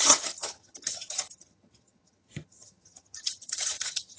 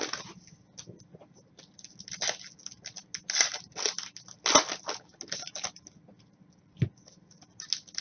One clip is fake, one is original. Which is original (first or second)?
second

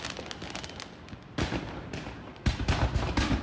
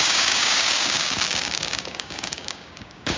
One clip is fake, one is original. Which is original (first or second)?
first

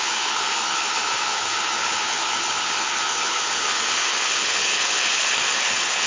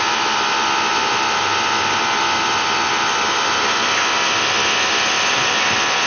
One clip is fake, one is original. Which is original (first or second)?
second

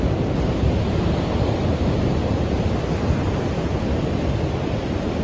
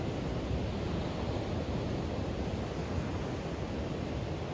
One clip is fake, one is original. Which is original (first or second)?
second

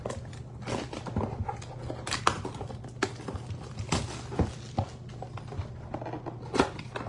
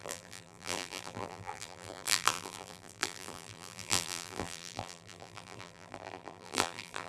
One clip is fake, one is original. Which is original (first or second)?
first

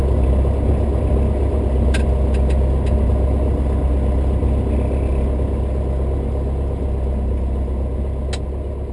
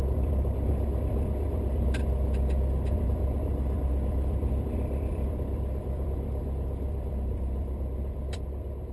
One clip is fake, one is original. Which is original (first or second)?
first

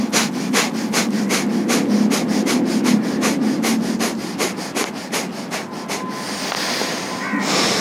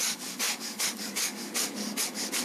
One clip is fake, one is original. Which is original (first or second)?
first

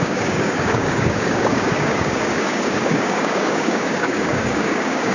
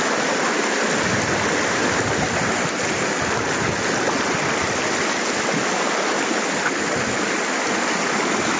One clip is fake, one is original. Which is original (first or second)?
second